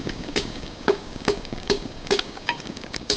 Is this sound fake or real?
fake